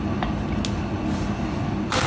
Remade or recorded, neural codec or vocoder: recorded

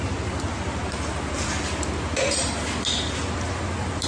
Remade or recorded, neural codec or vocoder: recorded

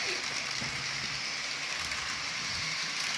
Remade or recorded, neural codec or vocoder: recorded